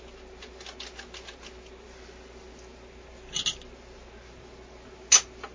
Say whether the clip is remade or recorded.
recorded